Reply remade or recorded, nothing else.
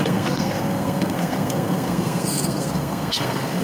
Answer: remade